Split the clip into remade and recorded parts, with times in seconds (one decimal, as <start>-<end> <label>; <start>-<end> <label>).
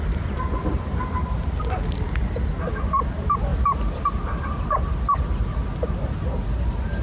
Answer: 0.0-7.0 recorded